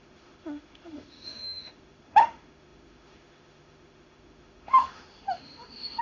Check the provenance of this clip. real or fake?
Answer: fake